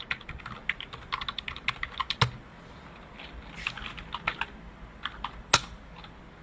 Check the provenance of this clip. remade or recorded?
recorded